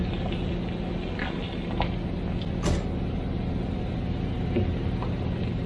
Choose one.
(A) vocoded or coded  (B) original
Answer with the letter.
B